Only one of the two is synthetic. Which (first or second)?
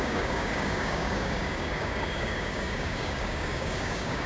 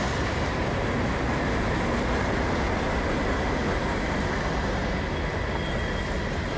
first